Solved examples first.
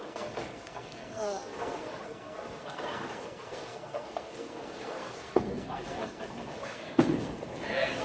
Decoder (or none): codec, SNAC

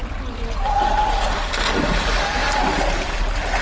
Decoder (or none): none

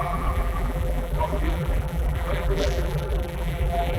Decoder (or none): vocoder, BigVGAN v2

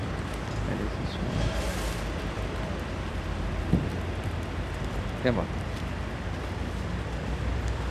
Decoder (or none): none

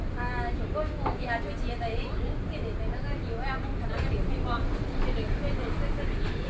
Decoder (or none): none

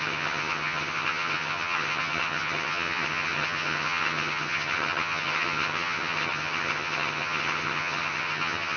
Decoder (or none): vocoder, HiFi-GAN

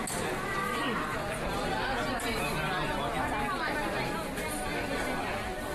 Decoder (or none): none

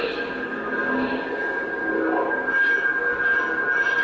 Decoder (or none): none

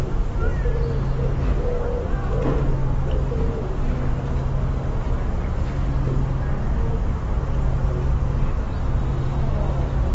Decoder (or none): none